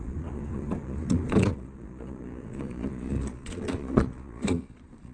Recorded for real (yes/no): no